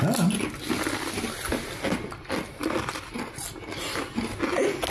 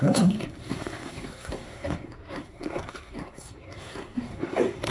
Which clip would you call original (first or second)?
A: first